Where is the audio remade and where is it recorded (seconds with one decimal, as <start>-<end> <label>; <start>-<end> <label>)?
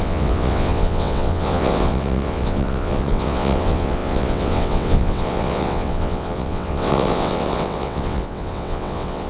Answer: 0.0-9.3 remade